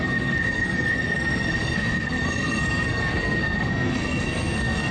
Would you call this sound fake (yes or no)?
yes